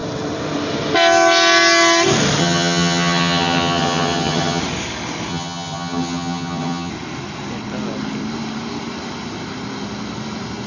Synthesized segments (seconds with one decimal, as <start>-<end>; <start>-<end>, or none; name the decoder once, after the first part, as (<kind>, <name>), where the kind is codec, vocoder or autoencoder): 2.4-4.6 (vocoder, HiFi-GAN); 5.3-6.9